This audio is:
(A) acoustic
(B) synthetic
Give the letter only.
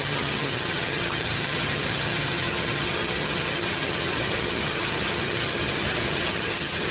B